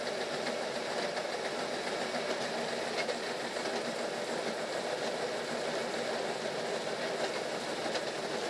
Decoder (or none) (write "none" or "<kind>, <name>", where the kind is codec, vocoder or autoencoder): none